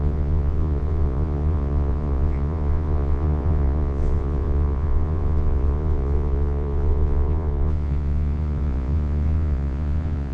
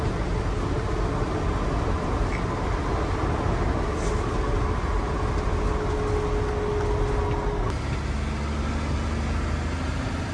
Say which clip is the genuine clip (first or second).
second